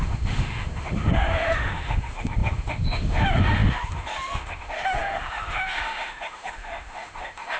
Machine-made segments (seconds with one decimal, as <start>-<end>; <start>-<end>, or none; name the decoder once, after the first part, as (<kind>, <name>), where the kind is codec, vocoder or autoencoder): 0.0-7.6 (autoencoder, DAC-VAE)